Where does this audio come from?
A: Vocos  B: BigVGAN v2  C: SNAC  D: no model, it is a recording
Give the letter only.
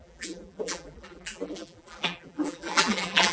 B